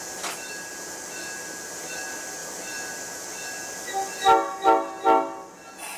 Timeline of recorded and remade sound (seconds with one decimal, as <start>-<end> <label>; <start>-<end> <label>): 0.0-6.0 recorded